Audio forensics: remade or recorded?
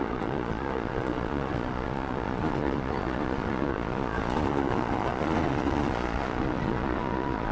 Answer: remade